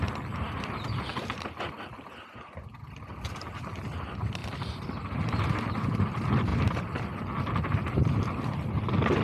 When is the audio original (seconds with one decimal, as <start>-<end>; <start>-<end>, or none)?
1.1-1.7; 4.4-5.5; 6.5-7.5